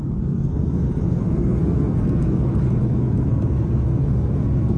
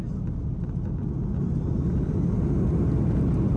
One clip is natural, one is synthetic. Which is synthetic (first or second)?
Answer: first